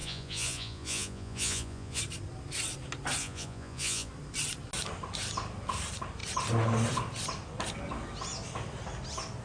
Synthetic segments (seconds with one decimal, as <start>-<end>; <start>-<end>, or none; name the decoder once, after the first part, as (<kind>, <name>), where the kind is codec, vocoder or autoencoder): 0.0-2.0 (vocoder, Vocos); 3.2-4.1